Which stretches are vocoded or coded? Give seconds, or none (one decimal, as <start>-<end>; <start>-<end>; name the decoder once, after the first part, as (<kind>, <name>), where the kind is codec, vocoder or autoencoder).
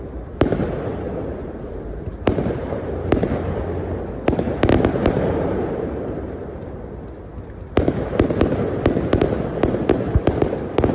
0.0-7.3 (vocoder, BigVGAN v2); 10.3-10.9